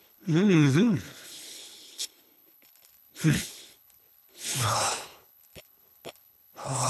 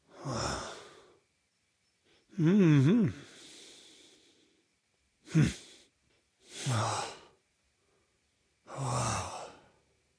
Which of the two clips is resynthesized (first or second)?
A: first